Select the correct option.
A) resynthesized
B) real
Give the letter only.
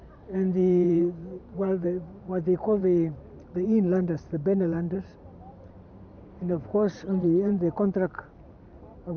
A